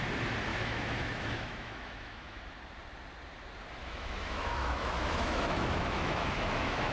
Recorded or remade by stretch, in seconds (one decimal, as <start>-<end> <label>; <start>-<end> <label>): 0.0-0.5 recorded; 0.5-2.4 remade; 2.4-3.8 recorded; 3.8-6.9 remade